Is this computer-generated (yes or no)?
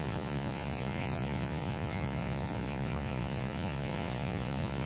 yes